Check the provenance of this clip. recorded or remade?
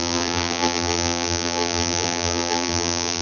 remade